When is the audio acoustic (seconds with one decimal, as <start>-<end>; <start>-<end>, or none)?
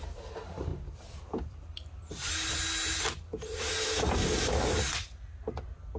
0.0-6.0